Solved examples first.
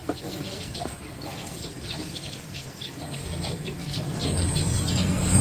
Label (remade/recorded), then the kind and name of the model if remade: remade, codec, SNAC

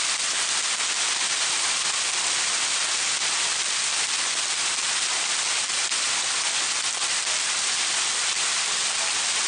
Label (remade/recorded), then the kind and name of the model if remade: recorded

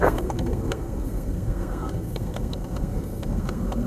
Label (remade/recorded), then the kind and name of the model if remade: remade, codec, SNAC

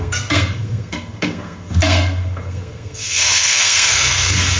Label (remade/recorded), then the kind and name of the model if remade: remade, codec, SNAC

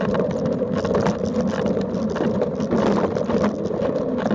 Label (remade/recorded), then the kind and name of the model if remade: recorded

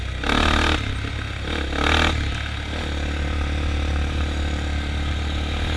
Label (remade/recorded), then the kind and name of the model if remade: recorded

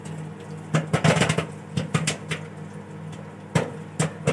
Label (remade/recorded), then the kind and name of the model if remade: recorded